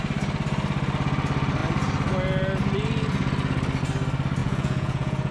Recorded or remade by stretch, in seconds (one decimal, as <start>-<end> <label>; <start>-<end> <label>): 0.0-4.4 recorded; 4.4-5.3 remade